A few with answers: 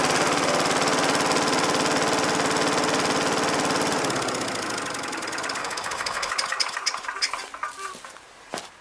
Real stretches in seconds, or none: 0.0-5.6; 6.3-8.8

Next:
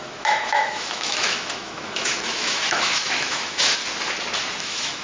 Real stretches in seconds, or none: 3.8-4.6

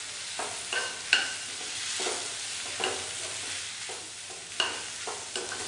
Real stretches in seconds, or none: 0.0-5.7

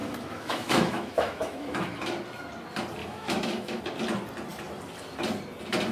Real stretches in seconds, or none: 1.8-3.0; 3.8-5.9

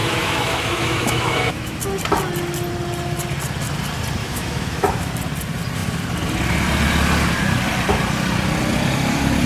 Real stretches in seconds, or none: 1.8-4.2; 5.1-9.5

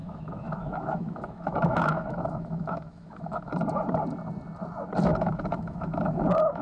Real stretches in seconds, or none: 3.5-5.1